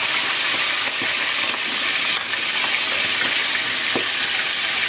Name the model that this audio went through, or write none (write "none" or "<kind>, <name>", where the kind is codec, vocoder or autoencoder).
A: none